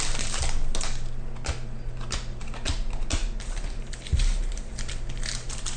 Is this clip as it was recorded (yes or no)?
yes